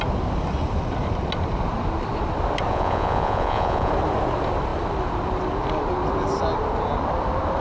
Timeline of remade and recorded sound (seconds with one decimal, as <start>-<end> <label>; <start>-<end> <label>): 0.0-2.7 recorded; 2.7-3.9 remade; 3.9-7.6 recorded